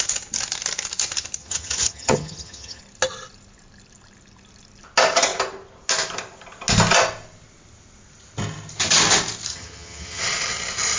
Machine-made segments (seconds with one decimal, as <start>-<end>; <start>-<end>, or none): 1.4-2.8; 9.5-10.2